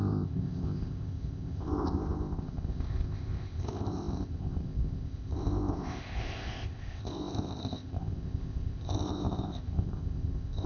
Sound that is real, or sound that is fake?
fake